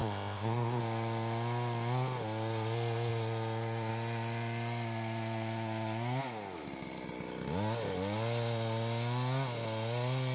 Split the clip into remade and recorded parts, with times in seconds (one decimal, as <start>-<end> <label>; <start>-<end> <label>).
0.0-0.8 remade; 0.8-10.3 recorded